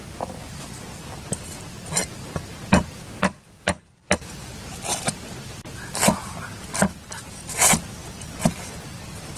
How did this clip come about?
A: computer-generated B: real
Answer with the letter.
A